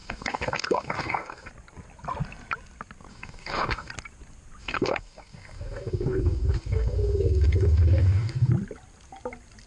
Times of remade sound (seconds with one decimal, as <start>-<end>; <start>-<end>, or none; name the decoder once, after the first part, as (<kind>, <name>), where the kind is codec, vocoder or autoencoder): 0.0-1.5 (codec, DAC); 3.1-3.9; 4.6-8.5